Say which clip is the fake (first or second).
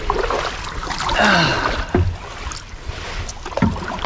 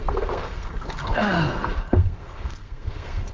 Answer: second